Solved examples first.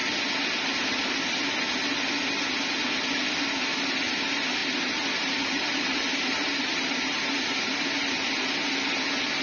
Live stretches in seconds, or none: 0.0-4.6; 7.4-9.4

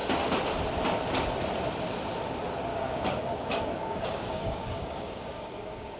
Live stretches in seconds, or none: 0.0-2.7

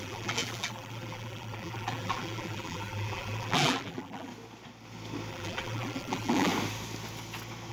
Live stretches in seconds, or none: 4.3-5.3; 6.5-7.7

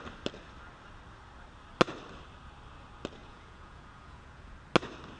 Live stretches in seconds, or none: 0.0-3.2; 4.5-5.2

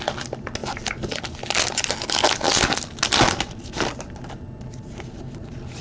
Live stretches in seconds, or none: 0.0-5.8